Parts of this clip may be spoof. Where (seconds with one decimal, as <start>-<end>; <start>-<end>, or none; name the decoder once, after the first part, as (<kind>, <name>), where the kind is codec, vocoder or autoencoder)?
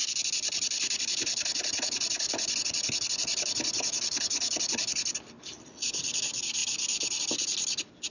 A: none